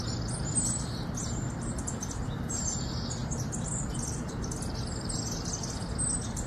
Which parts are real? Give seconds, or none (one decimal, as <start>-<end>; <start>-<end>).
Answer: 0.0-6.5

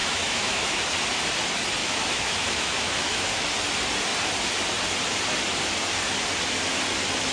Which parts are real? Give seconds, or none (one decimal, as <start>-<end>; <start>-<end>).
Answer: 0.8-1.8; 3.4-7.3

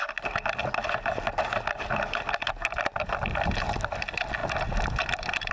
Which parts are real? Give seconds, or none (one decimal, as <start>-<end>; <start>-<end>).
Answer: 0.0-5.5

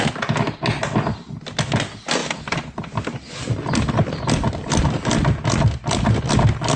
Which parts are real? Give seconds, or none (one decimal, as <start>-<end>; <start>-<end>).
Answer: 0.0-6.8